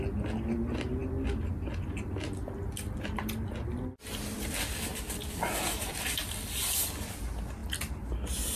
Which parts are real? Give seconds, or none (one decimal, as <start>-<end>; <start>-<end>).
0.0-8.6